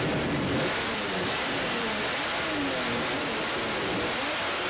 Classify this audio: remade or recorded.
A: recorded